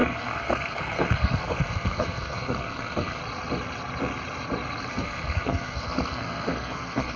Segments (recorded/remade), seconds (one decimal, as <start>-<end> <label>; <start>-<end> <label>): 0.0-3.2 remade; 3.2-4.9 recorded; 4.9-7.2 remade